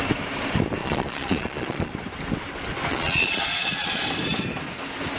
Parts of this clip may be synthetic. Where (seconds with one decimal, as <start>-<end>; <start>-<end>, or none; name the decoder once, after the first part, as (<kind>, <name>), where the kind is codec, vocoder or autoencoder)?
0.8-1.9 (vocoder, Vocos); 2.9-4.0